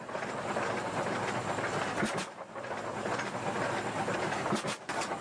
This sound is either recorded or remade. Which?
recorded